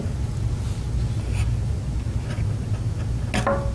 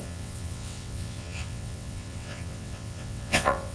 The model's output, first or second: second